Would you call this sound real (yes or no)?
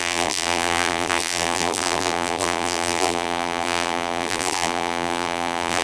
no